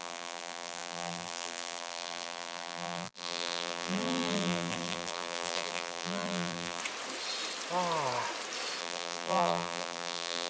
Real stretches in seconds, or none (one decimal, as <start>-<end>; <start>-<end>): 6.8-8.8